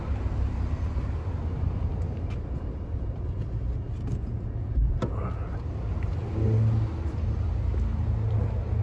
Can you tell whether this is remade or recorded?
recorded